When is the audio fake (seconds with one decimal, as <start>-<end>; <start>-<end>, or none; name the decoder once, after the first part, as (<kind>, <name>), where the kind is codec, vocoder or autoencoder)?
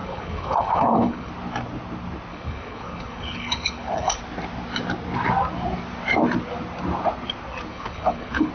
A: 0.0-1.3 (codec, HILCodec); 2.3-4.2; 7.7-8.5